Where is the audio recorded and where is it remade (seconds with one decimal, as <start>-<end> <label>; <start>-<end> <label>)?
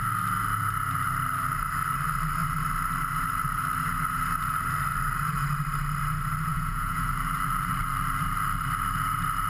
0.0-6.5 recorded; 6.5-7.1 remade; 7.1-9.5 recorded